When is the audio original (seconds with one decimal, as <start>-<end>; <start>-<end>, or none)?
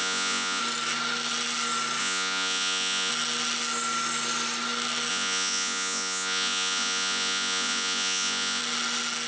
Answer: 0.6-2.0; 3.1-5.1; 8.6-9.3